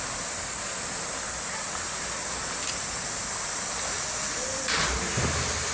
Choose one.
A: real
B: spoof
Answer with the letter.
A